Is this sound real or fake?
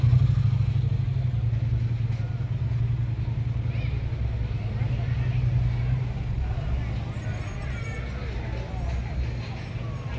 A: real